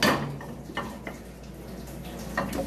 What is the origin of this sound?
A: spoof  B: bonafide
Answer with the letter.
B